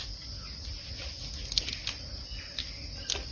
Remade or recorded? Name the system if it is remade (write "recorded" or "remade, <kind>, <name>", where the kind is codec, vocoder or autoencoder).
recorded